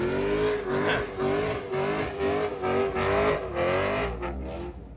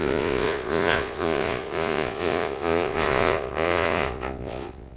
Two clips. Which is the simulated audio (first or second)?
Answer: second